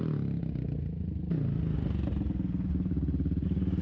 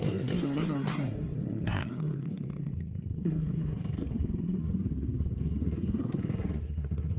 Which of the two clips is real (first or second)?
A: first